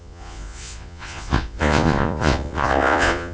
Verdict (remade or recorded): remade